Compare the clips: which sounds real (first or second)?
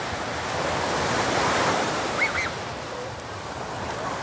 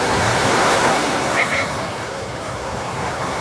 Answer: first